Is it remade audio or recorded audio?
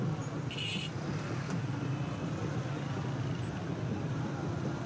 recorded